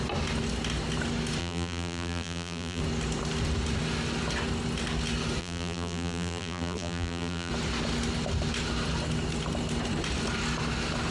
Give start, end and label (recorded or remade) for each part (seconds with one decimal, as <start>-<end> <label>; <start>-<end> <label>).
0.0-1.4 recorded; 1.4-2.8 remade; 2.8-5.4 recorded; 5.4-7.5 remade; 7.5-11.1 recorded